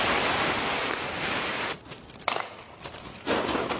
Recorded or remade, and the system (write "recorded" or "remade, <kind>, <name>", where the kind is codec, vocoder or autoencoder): recorded